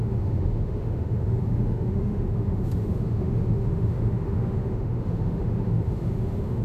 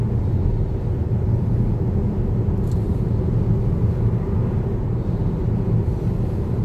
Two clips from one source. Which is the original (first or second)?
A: second